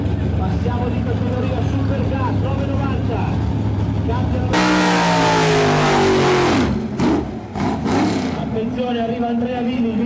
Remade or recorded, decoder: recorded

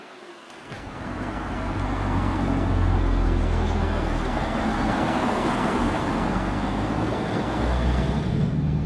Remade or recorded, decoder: remade, codec, SNAC